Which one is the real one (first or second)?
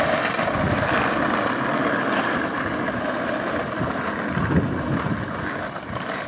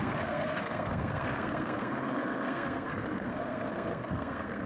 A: first